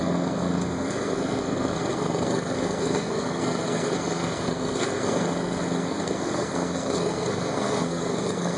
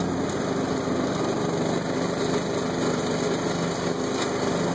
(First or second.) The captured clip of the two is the second